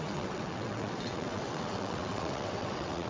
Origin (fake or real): fake